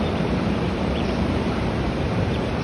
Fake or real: fake